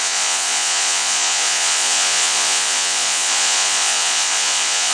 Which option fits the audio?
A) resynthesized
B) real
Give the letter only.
A